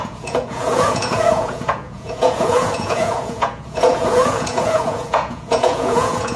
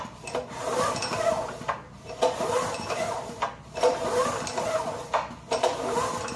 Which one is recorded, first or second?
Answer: second